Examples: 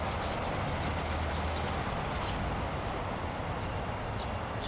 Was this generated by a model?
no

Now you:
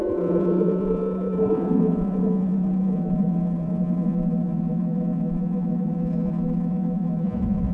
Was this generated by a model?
yes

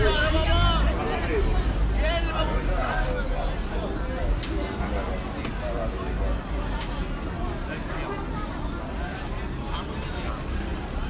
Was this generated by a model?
no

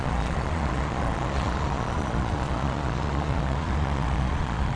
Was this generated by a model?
yes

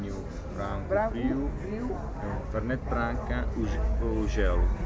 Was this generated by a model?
no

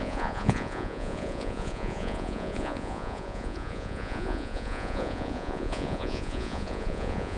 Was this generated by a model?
yes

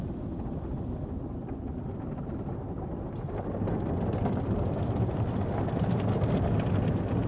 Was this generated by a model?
no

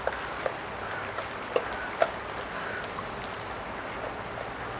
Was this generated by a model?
no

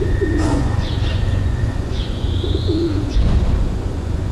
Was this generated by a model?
yes